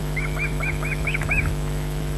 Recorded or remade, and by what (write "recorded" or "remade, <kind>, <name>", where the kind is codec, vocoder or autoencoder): remade, autoencoder, DAC-VAE